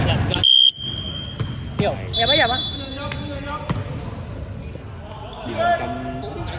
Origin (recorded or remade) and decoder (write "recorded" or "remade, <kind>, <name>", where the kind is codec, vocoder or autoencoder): recorded